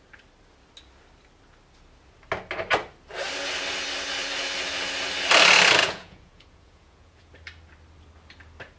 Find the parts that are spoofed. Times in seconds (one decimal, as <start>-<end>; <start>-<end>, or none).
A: 5.8-7.3